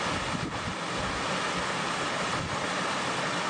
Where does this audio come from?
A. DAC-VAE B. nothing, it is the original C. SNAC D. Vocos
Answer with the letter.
B